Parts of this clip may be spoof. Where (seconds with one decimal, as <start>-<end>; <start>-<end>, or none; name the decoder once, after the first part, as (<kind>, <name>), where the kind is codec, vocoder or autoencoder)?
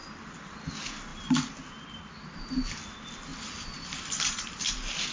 1.1-2.4 (vocoder, BigVGAN v2); 3.3-4.6